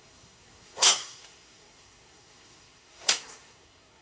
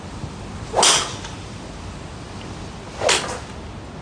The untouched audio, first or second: second